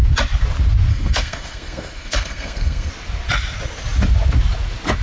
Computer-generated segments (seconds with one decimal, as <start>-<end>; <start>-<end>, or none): 0.9-2.9